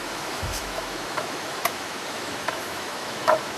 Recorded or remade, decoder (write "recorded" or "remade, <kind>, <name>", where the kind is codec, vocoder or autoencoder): remade, autoencoder, DAC-VAE